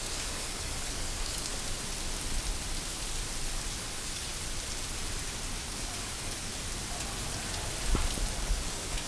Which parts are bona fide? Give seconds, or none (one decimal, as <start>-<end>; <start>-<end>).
1.5-3.7; 4.3-5.6; 6.5-8.4